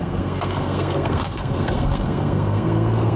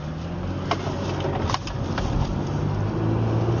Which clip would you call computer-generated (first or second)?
first